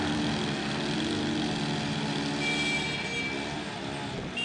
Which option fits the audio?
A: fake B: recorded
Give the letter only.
B